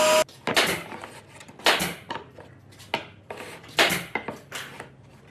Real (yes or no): yes